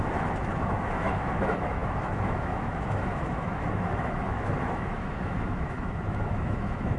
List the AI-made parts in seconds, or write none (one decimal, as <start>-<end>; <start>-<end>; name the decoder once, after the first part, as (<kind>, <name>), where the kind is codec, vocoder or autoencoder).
0.0-7.0 (autoencoder, DAC-VAE)